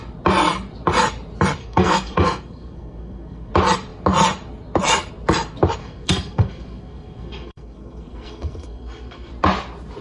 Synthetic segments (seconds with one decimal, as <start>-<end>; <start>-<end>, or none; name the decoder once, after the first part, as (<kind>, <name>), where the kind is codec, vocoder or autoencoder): 1.6-3.5 (codec, SNAC); 5.8-9.3